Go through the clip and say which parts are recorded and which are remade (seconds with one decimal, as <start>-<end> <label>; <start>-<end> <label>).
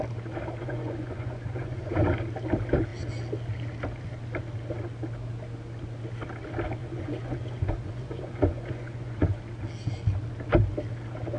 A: 0.0-0.6 recorded; 0.6-1.9 remade; 1.9-6.8 recorded; 6.8-9.4 remade; 9.4-11.4 recorded